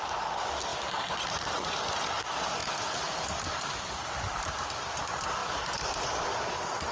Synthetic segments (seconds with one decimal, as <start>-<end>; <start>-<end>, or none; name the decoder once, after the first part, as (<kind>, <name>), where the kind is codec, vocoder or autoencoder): 0.0-2.6 (vocoder, BigVGAN v2); 3.3-6.9